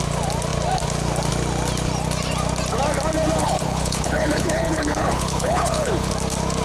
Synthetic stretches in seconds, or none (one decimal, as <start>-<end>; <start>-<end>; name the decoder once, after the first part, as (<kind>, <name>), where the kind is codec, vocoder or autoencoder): 3.4-6.1 (codec, HILCodec)